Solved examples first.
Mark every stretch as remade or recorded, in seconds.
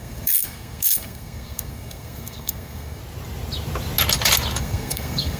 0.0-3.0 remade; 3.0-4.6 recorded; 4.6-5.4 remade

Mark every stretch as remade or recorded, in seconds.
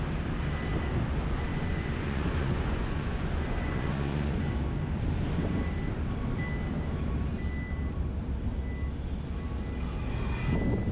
0.0-1.5 recorded; 1.5-4.5 remade; 4.5-10.9 recorded